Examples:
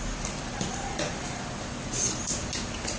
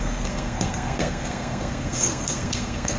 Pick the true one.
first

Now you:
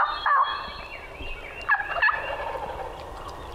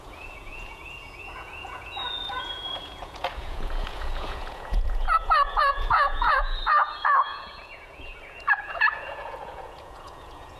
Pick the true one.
first